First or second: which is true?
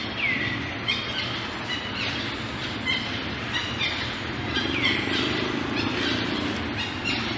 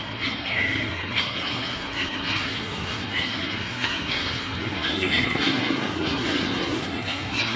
first